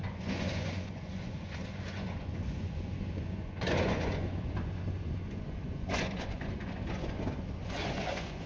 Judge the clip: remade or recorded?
remade